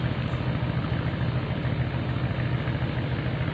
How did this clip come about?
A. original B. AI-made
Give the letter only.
A